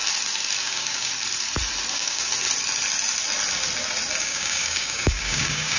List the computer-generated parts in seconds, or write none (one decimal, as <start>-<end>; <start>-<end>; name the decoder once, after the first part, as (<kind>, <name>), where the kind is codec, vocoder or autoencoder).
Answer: 0.6-1.1 (codec, DAC); 1.9-2.3; 4.2-5.8